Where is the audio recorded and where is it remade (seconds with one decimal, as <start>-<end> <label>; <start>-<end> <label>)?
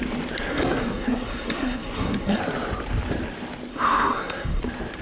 0.0-0.5 recorded; 0.5-2.4 remade; 2.4-3.7 recorded; 3.7-4.6 remade; 4.6-5.0 recorded